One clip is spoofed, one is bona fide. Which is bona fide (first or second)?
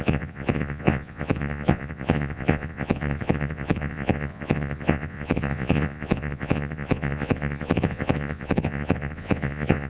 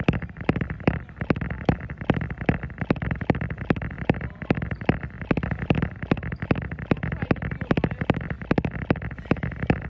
second